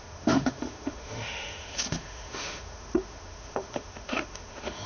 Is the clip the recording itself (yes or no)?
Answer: no